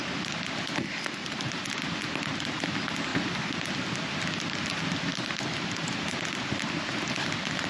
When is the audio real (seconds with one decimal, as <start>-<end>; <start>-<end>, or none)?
0.0-7.7